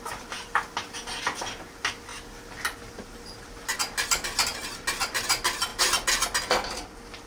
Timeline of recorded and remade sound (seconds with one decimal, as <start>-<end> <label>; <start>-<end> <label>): 0.0-7.3 recorded